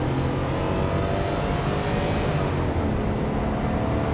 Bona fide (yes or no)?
yes